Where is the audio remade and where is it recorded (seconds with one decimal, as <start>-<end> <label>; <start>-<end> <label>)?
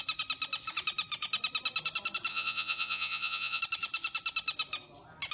0.0-2.3 recorded; 2.3-3.6 remade; 3.6-5.3 recorded